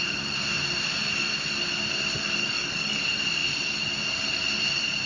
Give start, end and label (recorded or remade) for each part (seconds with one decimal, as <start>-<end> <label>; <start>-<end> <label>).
0.0-2.4 recorded; 2.4-3.0 remade; 3.0-5.1 recorded